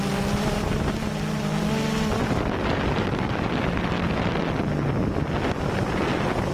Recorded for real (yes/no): yes